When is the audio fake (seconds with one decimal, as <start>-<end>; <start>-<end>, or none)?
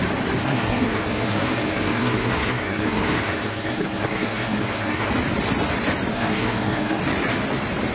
0.4-5.1; 6.1-7.0